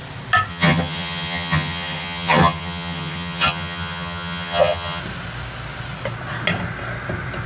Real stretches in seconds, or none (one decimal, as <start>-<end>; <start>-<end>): 0.0-0.5; 5.0-7.5